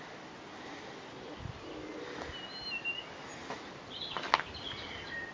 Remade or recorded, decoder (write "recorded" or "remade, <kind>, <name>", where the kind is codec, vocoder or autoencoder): recorded